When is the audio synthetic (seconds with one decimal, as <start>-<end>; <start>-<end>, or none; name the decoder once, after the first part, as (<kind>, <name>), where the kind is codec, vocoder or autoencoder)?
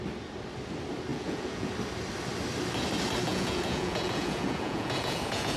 1.1-1.7 (vocoder, Vocos); 3.3-5.6